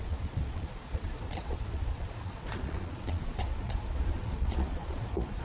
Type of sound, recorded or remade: remade